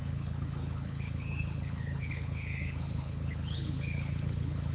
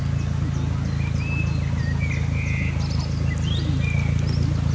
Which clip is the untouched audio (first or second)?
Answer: second